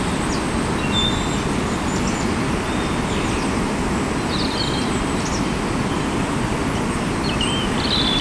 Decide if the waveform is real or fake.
real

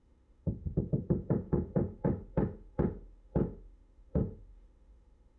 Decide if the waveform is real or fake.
fake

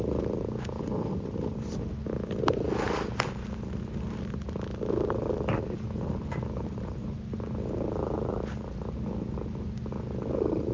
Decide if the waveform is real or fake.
real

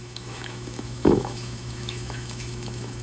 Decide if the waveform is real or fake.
fake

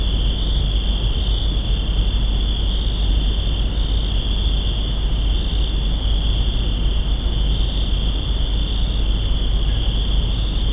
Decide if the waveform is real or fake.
real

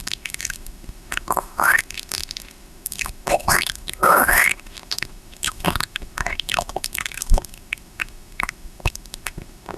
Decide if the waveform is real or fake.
fake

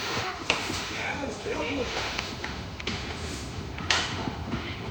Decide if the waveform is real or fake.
fake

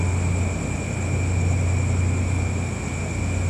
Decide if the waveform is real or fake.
real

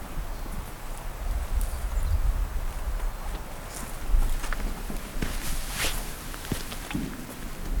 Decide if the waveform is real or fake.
real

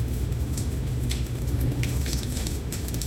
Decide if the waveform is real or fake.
fake